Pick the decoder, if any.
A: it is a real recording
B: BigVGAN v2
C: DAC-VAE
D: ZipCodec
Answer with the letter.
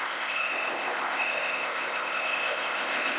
D